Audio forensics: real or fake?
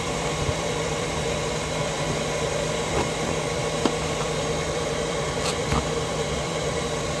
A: fake